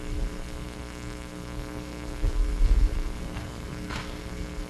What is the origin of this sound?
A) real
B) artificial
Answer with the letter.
B